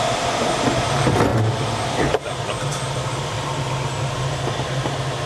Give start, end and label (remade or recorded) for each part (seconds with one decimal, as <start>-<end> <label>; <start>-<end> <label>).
0.0-5.3 recorded